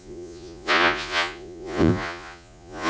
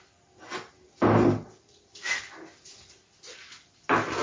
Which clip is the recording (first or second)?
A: second